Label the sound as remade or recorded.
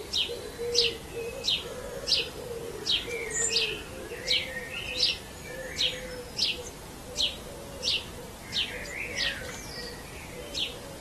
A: recorded